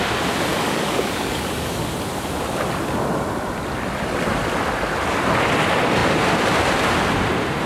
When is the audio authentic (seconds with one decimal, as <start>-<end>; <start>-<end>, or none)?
0.0-0.5; 1.9-7.7